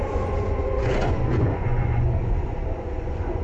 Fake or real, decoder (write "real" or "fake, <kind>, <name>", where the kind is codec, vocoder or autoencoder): fake, vocoder, Vocos